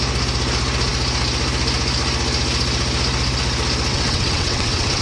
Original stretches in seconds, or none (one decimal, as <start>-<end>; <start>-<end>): 0.0-3.9

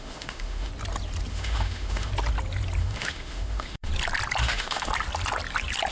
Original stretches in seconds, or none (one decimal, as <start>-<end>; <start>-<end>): 0.7-1.3; 2.1-2.8; 3.9-4.4; 4.9-5.9

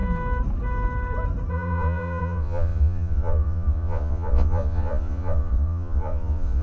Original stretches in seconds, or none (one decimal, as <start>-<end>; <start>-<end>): 0.0-1.5

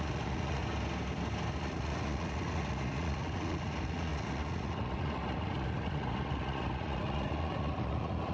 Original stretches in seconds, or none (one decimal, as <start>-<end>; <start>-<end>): 0.6-1.6

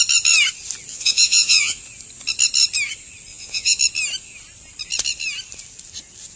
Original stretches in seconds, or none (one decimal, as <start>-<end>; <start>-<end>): 0.0-0.9; 1.8-3.3; 3.8-6.4

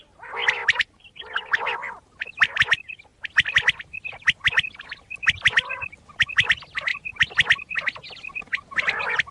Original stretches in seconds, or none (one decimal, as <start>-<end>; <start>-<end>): 0.0-9.3